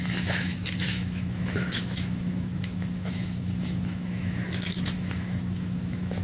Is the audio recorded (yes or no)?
no